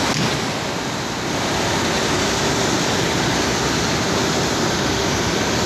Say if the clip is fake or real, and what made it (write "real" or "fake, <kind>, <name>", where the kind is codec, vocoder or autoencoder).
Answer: real